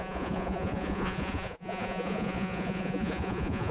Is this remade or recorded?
remade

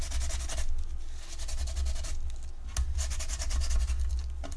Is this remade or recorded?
recorded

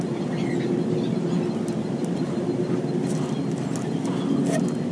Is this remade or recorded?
recorded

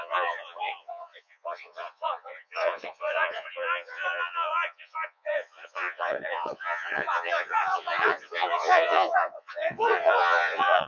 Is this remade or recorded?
remade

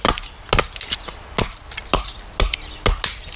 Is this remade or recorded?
recorded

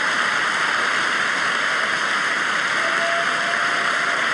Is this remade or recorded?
recorded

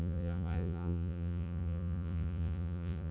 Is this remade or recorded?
remade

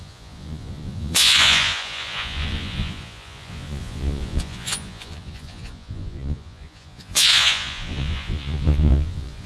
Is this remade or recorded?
remade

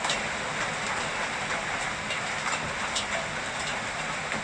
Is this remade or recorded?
recorded